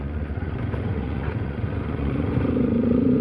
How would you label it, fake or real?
fake